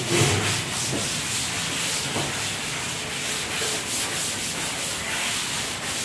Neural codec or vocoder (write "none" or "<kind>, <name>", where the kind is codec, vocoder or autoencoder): none